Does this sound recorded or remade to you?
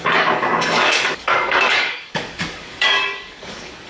remade